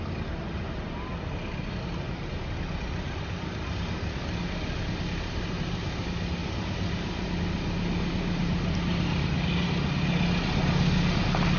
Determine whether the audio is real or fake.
real